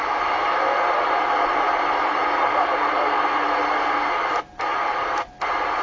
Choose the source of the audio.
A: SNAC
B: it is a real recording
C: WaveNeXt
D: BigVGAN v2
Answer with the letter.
B